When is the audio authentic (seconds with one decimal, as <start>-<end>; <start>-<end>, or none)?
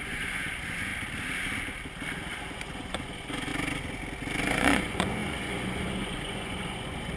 0.9-2.3; 3.5-4.4